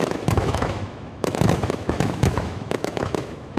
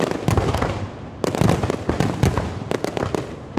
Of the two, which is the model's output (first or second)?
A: first